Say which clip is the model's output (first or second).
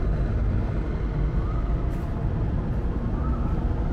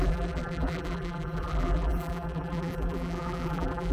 second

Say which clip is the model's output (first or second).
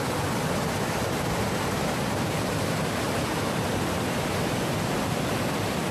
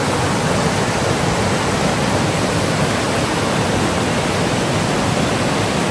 first